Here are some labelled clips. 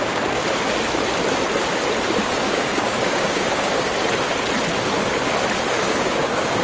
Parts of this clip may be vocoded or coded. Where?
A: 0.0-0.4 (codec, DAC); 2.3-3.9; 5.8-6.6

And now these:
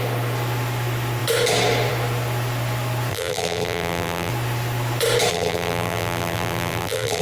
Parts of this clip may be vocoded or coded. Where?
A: 3.1-4.3 (vocoder, BigVGAN v2); 5.3-7.2

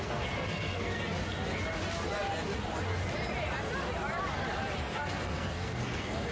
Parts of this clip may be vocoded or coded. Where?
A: 0.0-1.0 (codec, SNAC); 4.8-6.3